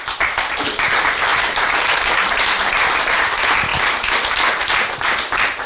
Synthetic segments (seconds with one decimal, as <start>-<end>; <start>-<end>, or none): 1.3-2.2